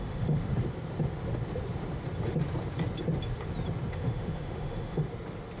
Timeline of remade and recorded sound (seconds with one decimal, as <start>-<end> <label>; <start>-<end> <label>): 0.0-0.5 remade; 0.5-3.9 recorded; 3.9-5.0 remade; 5.0-5.6 recorded

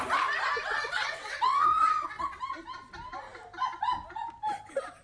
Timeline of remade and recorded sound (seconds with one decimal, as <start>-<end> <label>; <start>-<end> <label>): 0.0-0.7 recorded; 0.7-2.4 remade; 2.4-5.0 recorded

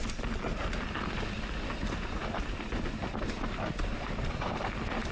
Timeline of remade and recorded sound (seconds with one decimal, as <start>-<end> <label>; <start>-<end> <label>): 0.0-5.1 recorded

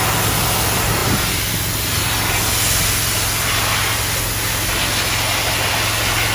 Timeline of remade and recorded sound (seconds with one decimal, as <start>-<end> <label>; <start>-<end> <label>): 0.0-6.3 recorded

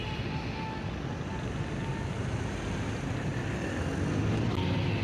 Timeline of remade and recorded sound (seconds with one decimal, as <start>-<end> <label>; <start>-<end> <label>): 0.0-5.0 recorded